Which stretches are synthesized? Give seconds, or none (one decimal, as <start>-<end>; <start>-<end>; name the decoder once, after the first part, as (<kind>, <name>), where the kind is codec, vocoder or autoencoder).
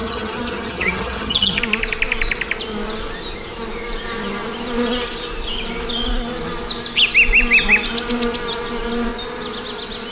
0.0-1.6 (vocoder, HiFi-GAN)